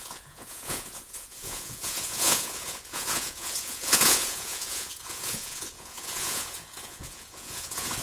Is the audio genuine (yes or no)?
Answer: no